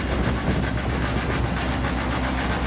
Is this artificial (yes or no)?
no